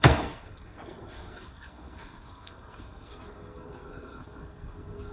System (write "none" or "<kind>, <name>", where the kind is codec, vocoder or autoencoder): codec, SNAC